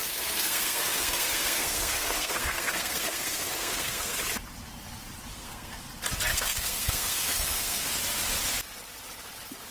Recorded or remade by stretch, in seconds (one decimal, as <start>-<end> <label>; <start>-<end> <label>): 0.0-4.2 remade; 4.2-5.3 recorded; 5.3-5.8 remade; 5.8-6.3 recorded; 6.3-7.9 remade; 7.9-9.7 recorded